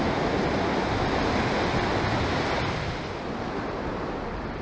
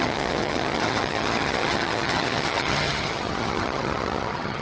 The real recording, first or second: first